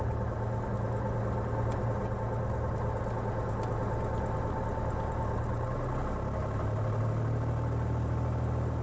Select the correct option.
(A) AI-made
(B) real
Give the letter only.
B